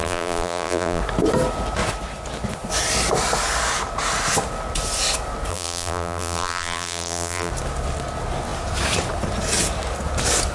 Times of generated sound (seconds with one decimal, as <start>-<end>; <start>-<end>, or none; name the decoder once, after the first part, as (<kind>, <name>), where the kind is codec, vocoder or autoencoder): 0.0-1.0 (vocoder, BigVGAN v2); 5.5-7.5